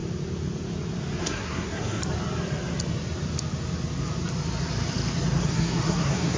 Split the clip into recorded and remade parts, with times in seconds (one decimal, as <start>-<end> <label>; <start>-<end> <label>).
0.0-1.2 recorded; 1.2-2.0 remade; 2.0-5.4 recorded; 5.4-6.4 remade